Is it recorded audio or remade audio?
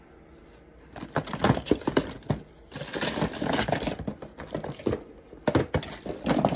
recorded